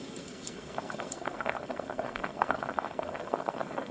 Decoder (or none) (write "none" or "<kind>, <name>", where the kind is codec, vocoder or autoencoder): codec, SNAC